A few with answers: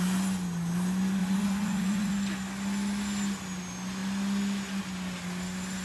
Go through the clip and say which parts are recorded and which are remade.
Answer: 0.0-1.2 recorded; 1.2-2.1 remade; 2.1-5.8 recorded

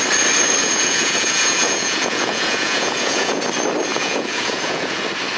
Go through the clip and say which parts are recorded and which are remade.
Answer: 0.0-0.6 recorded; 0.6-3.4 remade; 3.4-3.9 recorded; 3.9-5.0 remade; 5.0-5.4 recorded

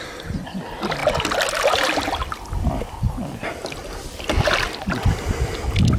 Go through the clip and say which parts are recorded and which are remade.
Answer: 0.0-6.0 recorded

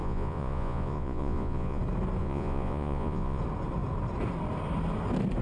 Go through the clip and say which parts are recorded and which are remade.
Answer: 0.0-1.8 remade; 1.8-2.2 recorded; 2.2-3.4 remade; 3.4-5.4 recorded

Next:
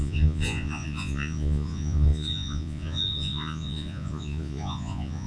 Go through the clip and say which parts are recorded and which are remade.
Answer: 0.0-5.3 remade

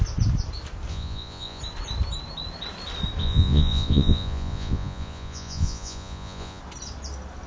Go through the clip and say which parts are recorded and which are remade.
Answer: 0.0-0.9 recorded; 0.9-1.6 remade; 1.6-3.2 recorded; 3.2-6.6 remade; 6.6-7.5 recorded